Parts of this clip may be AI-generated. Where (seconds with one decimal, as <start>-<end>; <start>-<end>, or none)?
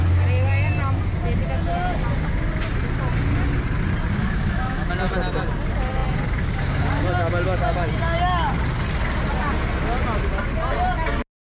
4.2-4.9